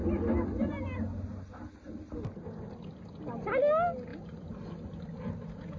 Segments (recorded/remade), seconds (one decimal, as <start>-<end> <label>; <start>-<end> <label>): 0.0-5.8 recorded